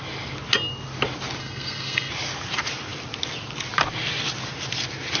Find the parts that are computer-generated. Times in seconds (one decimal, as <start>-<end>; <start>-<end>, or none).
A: 1.4-2.1